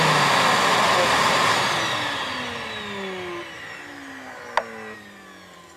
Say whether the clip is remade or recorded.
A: recorded